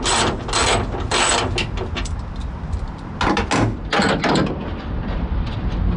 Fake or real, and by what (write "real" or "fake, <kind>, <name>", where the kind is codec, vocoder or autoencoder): real